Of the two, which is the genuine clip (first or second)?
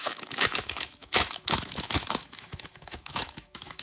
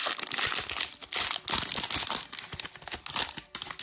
second